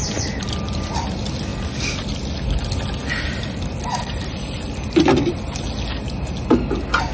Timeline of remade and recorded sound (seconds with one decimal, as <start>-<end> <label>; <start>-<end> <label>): 0.0-7.1 recorded